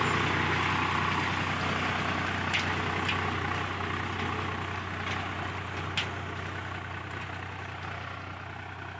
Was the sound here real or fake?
real